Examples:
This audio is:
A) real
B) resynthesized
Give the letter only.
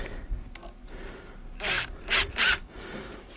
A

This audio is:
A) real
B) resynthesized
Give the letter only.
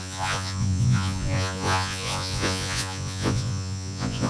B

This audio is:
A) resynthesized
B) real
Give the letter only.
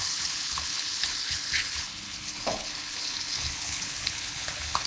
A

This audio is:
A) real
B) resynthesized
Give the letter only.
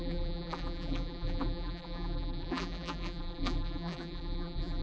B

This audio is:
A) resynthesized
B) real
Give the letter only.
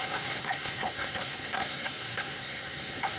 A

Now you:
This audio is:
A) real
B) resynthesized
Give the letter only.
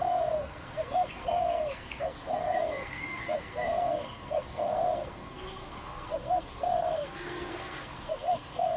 B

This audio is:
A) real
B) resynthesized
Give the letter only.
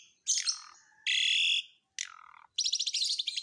A